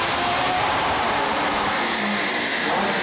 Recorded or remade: remade